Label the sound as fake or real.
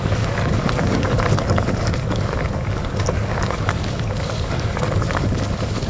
fake